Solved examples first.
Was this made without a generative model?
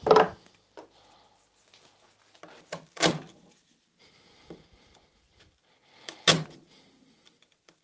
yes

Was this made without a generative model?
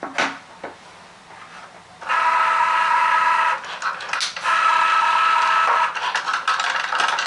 yes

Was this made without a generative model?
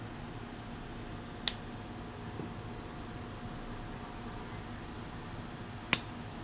yes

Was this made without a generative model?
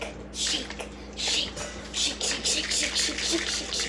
yes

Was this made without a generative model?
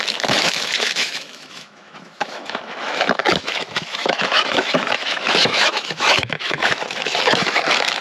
no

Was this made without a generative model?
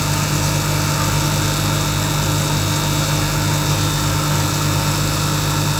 yes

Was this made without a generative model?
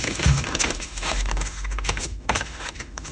no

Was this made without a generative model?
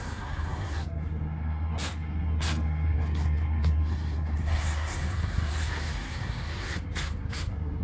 no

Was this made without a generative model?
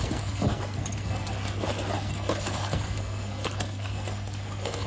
no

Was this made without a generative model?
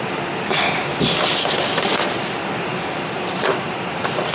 yes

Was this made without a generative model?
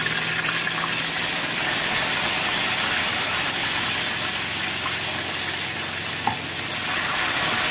yes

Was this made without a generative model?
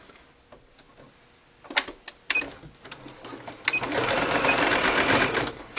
yes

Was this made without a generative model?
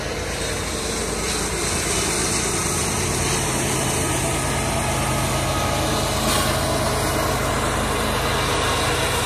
yes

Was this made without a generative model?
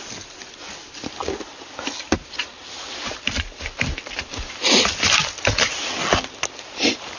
yes